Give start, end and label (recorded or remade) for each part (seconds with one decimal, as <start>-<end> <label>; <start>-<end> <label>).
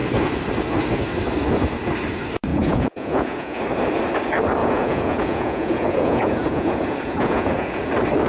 0.0-2.5 recorded; 2.5-3.6 remade; 3.6-4.6 recorded; 4.6-7.8 remade; 7.8-8.3 recorded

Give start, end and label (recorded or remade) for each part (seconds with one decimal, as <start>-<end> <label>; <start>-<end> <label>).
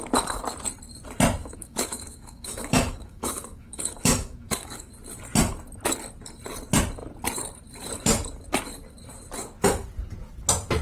0.0-1.4 recorded; 1.4-4.9 remade; 4.9-10.8 recorded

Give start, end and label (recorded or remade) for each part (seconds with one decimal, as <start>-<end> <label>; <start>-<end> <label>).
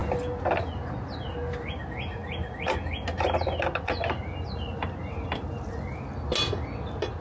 0.0-7.2 recorded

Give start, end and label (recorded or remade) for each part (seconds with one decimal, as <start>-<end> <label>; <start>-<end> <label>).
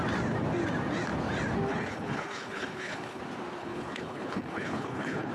0.0-1.7 recorded; 1.7-3.2 remade; 3.2-3.6 recorded; 3.6-5.3 remade